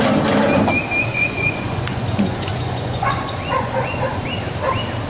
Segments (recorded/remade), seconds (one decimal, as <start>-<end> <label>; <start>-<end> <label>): 0.0-1.1 recorded; 1.1-4.2 remade; 4.2-5.1 recorded